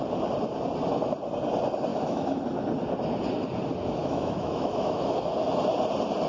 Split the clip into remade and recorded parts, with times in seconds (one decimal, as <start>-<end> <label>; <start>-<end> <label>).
0.0-1.9 recorded; 1.9-2.4 remade; 2.4-4.0 recorded; 4.0-5.2 remade; 5.2-6.3 recorded